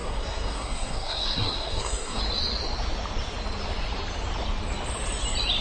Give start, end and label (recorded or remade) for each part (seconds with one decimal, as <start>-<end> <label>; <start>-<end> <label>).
0.0-2.2 remade; 2.2-5.6 recorded